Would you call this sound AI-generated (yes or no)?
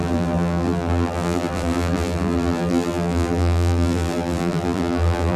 yes